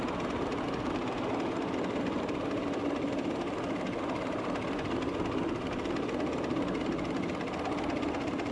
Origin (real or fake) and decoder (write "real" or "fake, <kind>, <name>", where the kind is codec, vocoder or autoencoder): real